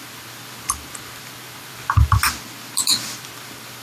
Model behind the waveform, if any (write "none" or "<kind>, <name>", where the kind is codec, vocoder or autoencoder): vocoder, BigVGAN v2